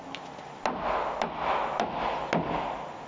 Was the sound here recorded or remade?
recorded